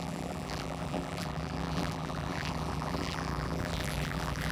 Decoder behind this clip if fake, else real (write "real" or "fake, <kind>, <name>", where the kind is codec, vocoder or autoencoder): fake, vocoder, BigVGAN v2